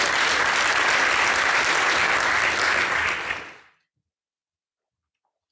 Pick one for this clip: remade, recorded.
recorded